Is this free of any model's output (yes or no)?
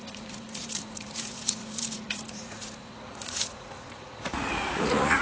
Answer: no